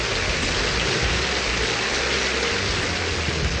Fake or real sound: real